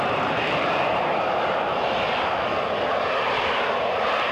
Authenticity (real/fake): fake